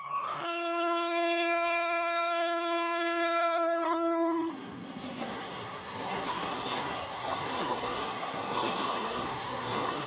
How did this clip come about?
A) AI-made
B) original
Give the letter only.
A